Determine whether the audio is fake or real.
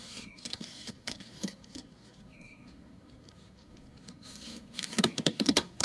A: fake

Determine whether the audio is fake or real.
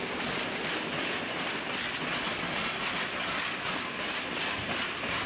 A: real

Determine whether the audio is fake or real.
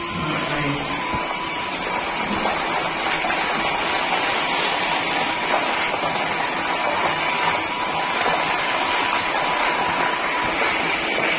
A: real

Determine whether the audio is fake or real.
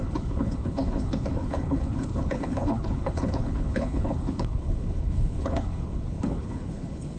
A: fake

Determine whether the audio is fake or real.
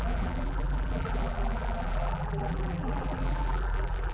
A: fake